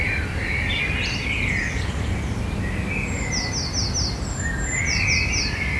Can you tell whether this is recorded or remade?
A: recorded